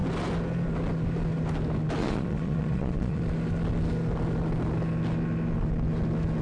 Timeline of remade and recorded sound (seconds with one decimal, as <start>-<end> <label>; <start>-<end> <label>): 0.0-2.0 recorded; 2.0-3.2 remade; 3.2-6.4 recorded